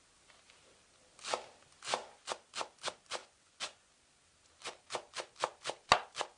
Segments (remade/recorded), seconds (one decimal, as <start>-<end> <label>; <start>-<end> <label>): 0.0-3.2 recorded; 3.2-3.9 remade; 3.9-6.4 recorded